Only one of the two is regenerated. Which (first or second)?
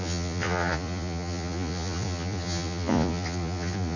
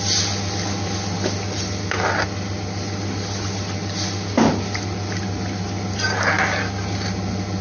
first